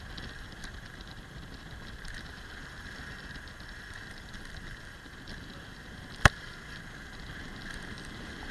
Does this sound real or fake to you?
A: real